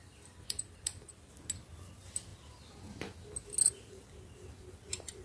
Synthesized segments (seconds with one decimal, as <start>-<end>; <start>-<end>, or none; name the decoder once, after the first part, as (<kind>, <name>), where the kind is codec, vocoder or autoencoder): 0.0-1.3 (vocoder, BigVGAN v2)